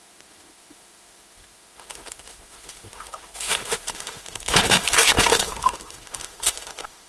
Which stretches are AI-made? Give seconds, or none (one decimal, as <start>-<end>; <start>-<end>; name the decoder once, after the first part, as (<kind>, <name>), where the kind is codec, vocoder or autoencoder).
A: 0.0-7.1 (autoencoder, DAC-VAE)

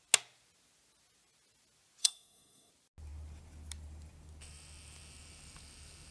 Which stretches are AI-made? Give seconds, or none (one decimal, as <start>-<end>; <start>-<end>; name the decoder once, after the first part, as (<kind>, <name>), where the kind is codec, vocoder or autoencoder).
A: 2.0-2.7 (codec, SNAC)